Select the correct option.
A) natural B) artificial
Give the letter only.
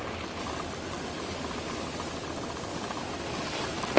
A